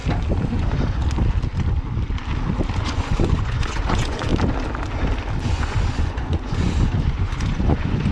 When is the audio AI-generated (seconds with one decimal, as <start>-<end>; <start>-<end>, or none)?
0.5-1.0; 2.8-4.3; 5.4-8.1